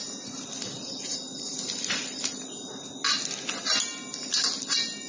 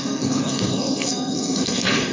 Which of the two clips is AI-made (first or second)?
second